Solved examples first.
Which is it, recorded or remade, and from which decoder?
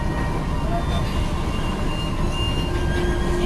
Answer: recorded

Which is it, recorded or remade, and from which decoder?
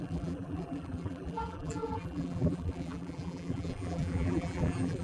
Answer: remade, vocoder, BigVGAN v2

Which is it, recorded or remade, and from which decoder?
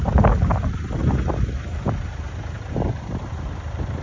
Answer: recorded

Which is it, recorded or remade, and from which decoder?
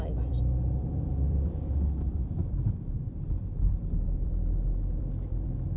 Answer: remade, vocoder, BigVGAN v2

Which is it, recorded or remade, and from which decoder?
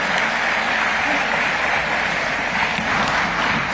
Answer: recorded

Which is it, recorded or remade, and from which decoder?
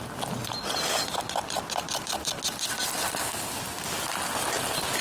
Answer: recorded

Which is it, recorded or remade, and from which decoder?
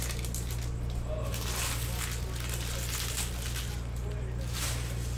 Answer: recorded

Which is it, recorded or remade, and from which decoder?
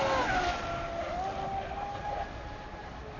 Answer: recorded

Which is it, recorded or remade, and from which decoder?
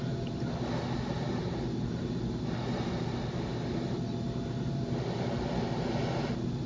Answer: recorded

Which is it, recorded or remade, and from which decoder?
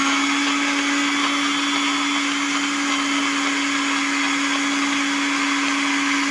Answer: recorded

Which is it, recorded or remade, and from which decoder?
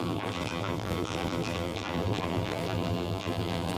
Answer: remade, vocoder, BigVGAN v2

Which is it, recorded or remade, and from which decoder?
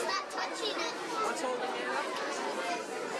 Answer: remade, vocoder, BigVGAN v2